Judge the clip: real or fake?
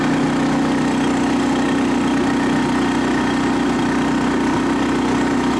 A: real